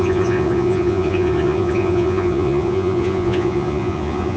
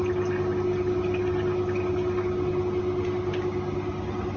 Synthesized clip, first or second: first